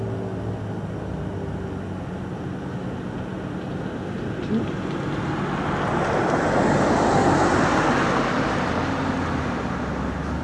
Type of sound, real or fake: real